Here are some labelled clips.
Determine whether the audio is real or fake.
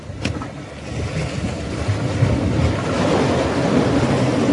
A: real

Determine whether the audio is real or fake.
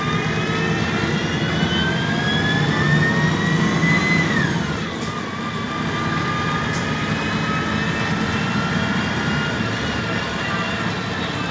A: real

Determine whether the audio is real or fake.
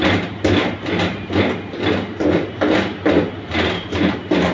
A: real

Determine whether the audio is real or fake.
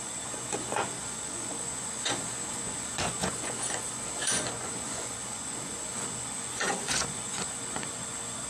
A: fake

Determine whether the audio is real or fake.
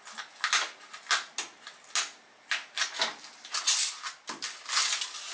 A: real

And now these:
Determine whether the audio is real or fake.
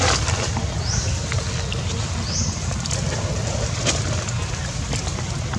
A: real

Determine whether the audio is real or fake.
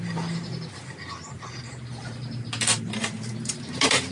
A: real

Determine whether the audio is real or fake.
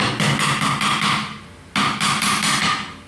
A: real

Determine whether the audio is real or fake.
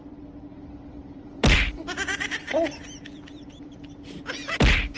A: fake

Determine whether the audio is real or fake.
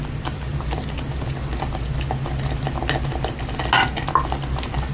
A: real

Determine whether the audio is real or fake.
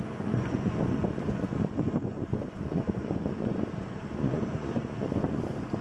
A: fake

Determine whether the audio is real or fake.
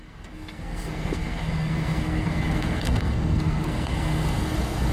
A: fake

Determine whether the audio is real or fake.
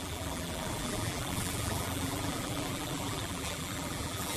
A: fake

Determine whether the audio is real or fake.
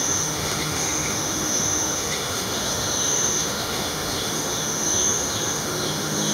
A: fake